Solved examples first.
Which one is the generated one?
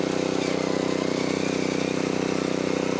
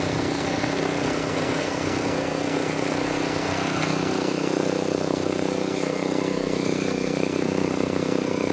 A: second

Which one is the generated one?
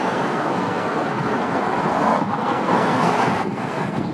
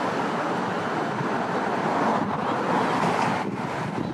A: first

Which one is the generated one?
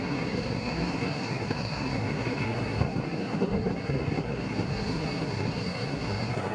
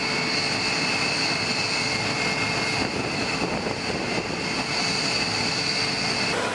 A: first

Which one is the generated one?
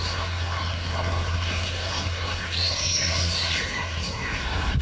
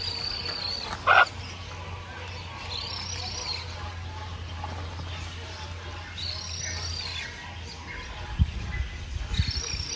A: first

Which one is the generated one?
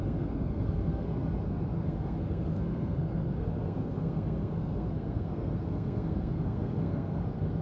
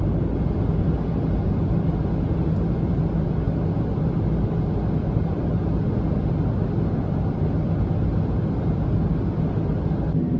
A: first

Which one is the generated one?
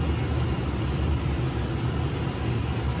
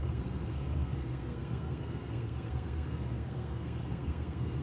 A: second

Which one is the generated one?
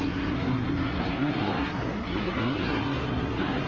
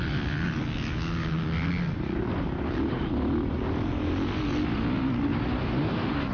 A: first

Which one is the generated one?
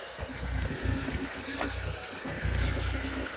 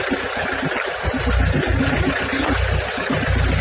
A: first